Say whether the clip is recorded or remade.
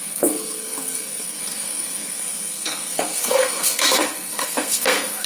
remade